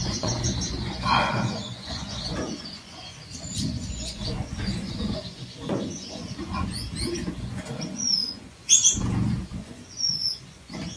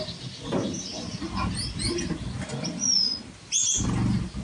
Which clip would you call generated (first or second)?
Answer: first